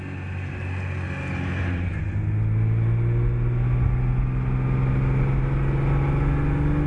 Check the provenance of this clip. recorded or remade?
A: recorded